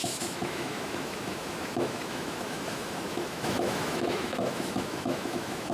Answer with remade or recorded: remade